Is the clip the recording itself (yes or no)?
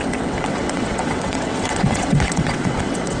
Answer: no